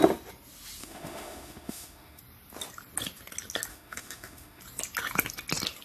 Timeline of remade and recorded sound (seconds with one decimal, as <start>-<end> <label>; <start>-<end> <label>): 0.0-0.8 recorded; 0.8-2.2 remade; 2.2-3.7 recorded; 3.7-4.6 remade; 4.6-5.8 recorded